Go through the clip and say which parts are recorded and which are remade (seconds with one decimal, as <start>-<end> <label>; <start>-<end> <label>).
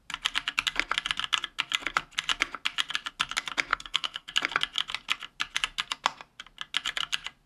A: 0.0-3.7 recorded; 3.7-4.3 remade; 4.3-7.5 recorded